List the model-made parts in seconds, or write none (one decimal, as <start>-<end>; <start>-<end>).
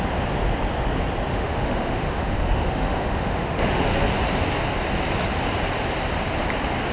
1.3-3.8